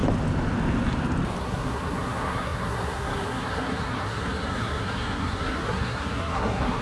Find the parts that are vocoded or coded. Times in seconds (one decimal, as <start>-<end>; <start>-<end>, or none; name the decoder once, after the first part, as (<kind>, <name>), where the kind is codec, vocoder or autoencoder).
1.4-6.8 (codec, SNAC)